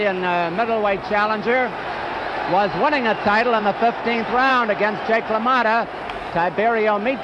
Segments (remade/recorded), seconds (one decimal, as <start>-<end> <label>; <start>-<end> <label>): 0.0-7.2 recorded